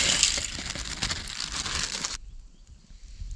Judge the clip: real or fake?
real